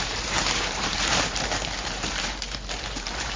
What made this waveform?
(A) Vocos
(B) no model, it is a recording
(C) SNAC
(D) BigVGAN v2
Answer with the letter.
D